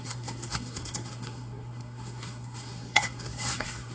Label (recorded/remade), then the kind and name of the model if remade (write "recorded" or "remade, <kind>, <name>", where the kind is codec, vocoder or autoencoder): remade, codec, SNAC